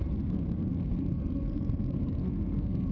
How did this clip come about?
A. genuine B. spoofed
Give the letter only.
B